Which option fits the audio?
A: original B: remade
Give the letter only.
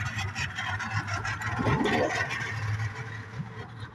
A